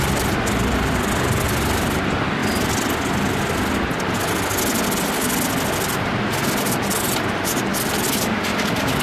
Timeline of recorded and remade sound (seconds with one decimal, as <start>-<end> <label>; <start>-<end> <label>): 0.0-2.4 remade; 2.4-6.7 recorded; 6.7-9.0 remade

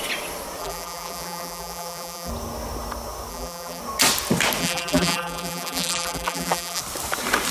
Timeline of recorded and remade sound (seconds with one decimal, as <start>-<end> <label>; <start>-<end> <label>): 0.0-0.6 recorded; 0.6-2.3 remade; 2.3-3.3 recorded; 3.3-3.8 remade; 3.8-4.6 recorded; 4.6-6.8 remade; 6.8-7.5 recorded

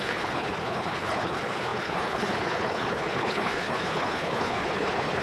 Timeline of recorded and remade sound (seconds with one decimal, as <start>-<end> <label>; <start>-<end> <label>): 0.0-5.2 remade

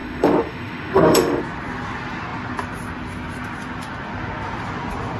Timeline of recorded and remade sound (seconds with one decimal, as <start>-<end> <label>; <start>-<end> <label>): 0.0-1.4 remade; 1.4-5.2 recorded

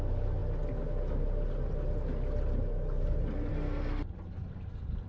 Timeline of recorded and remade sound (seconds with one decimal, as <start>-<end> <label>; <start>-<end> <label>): 0.0-5.1 recorded

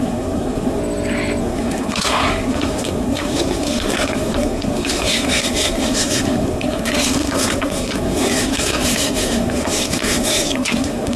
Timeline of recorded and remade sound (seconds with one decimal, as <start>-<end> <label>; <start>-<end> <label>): 0.0-0.8 remade; 0.8-1.4 recorded; 1.4-11.2 remade

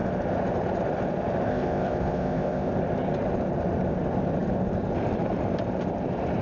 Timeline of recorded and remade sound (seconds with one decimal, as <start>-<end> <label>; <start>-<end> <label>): 0.0-1.5 recorded; 1.5-2.7 remade; 2.7-6.4 recorded